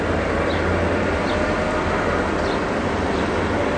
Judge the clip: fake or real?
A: real